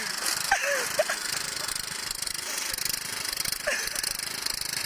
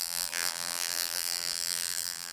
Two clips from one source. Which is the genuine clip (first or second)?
first